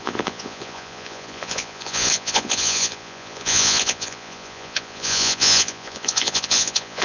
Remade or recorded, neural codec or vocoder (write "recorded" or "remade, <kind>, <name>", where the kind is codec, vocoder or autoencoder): remade, vocoder, Vocos